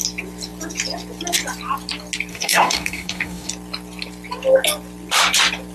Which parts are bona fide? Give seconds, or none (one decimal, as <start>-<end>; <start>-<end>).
0.0-2.3; 3.5-5.7